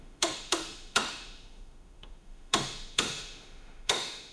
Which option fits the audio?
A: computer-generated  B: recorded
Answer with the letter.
A